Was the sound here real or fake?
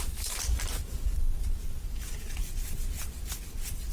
fake